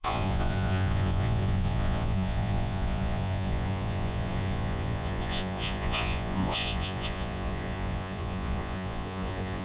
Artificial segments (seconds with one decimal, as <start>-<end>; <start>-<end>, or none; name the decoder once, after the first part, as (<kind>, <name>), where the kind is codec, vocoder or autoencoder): 0.0-9.6 (vocoder, Vocos)

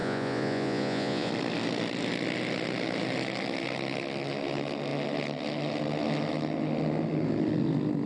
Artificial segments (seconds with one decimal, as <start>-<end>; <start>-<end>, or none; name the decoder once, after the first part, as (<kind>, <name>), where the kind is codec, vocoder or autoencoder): 0.0-1.3 (vocoder, Vocos)